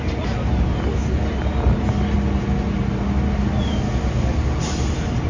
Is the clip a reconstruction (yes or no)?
no